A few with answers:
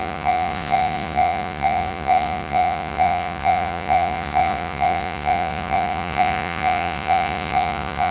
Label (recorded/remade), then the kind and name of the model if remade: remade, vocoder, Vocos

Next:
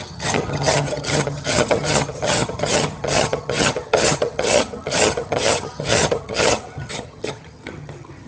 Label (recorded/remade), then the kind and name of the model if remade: remade, vocoder, HiFi-GAN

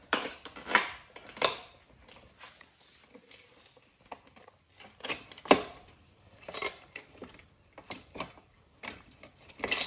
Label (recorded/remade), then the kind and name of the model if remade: remade, vocoder, BigVGAN v2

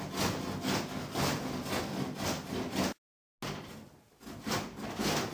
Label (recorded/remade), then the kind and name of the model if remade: recorded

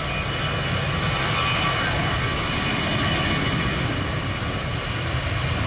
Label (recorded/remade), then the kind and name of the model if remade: recorded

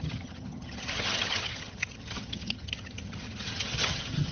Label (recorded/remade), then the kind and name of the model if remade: remade, vocoder, HiFi-GAN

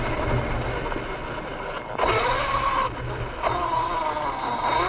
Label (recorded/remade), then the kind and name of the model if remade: recorded